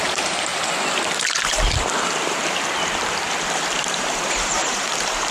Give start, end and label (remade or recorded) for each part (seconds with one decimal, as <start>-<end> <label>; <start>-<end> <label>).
0.0-0.5 remade; 0.5-3.7 recorded; 3.7-5.3 remade